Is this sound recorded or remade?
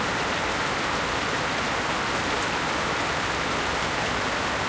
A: recorded